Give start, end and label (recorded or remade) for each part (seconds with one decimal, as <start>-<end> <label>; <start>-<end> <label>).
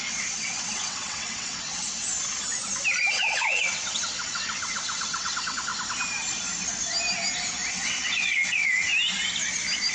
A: 0.0-2.1 remade; 2.1-3.1 recorded; 3.1-5.7 remade; 5.7-7.7 recorded; 7.7-8.9 remade; 8.9-9.9 recorded